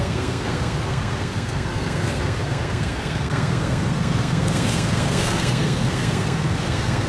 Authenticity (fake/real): fake